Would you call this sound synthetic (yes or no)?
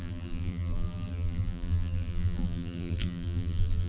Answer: yes